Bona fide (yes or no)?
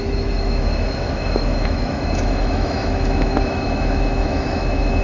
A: no